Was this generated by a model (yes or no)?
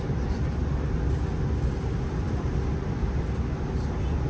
no